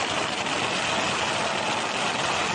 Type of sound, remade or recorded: recorded